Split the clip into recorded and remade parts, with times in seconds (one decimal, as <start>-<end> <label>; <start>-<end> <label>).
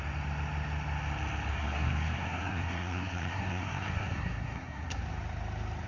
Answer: 0.0-1.5 recorded; 1.5-5.0 remade; 5.0-5.9 recorded